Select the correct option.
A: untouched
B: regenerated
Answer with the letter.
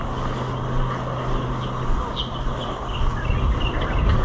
A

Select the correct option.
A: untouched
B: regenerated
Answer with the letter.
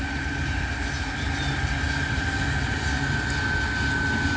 A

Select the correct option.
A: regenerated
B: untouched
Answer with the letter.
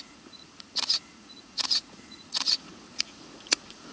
A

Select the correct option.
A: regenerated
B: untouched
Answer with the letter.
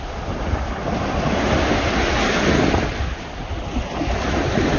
B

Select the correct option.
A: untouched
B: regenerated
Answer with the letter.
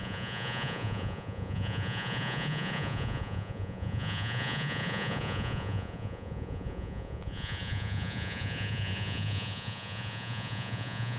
B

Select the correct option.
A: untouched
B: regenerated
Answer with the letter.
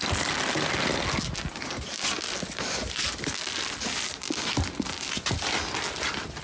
A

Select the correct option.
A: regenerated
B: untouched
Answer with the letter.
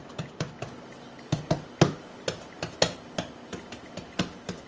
B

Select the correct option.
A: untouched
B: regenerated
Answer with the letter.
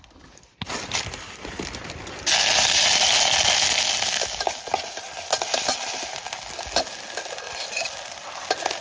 A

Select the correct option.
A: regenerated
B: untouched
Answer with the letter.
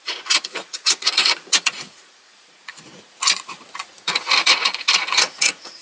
A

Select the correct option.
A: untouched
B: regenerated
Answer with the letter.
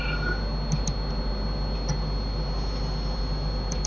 A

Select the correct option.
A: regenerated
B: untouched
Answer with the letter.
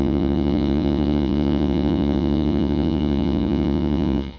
A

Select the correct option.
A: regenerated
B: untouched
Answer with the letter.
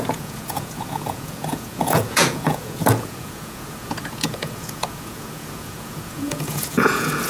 A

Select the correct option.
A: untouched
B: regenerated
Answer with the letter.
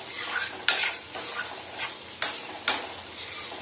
A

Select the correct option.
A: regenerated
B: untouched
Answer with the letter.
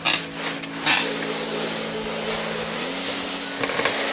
B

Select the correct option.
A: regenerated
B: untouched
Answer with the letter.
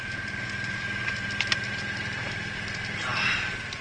B